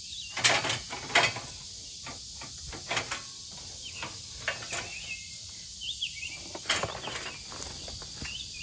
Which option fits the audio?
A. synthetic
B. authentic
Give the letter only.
B